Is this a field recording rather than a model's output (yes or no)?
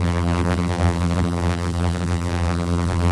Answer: no